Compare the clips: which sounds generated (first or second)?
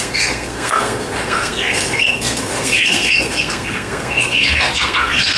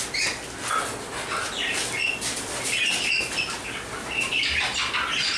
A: first